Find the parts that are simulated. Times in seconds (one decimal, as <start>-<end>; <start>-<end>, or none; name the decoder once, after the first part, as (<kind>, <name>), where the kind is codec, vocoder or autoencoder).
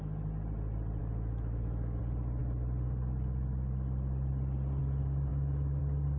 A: 1.0-2.0 (autoencoder, DAC-VAE); 5.3-5.8